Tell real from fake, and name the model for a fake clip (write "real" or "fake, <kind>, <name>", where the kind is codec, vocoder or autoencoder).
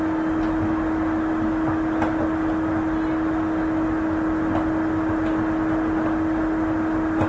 real